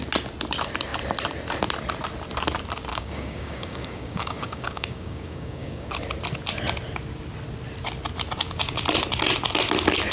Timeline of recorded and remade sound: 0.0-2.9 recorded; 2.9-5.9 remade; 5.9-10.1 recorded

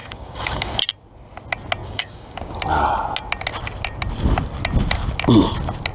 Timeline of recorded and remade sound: 0.0-0.8 remade; 0.8-1.8 recorded; 1.8-2.6 remade; 2.6-5.9 recorded

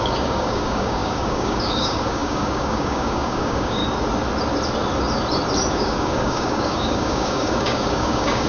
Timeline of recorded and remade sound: 0.0-3.8 remade; 3.8-5.7 recorded; 5.7-8.5 remade

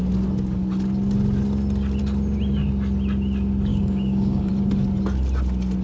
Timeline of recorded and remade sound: 0.0-3.7 recorded; 3.7-4.5 remade; 4.5-5.8 recorded